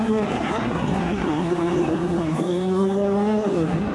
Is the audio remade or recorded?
remade